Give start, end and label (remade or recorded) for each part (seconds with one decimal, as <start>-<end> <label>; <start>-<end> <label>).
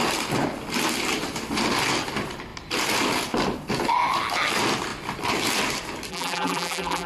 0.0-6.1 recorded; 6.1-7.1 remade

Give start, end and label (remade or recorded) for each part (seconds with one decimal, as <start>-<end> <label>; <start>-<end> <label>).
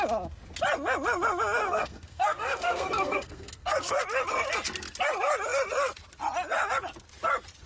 0.0-1.6 recorded; 1.6-4.0 remade; 4.0-7.7 recorded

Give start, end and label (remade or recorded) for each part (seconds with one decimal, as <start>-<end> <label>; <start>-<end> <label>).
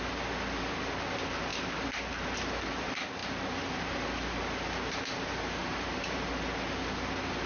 0.0-5.6 recorded; 5.6-6.3 remade; 6.3-7.5 recorded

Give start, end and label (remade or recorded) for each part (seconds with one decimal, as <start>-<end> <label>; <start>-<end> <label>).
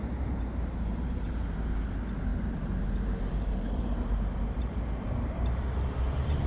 0.0-6.5 remade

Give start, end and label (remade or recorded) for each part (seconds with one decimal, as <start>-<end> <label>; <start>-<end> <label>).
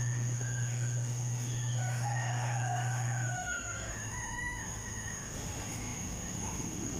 0.0-7.0 remade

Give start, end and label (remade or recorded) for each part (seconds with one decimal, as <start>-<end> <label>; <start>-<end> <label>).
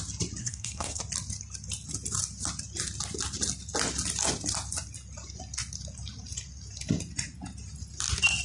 0.0-0.4 recorded; 0.4-1.0 remade; 1.0-8.4 recorded